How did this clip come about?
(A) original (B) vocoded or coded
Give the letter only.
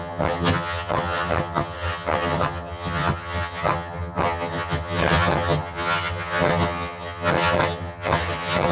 B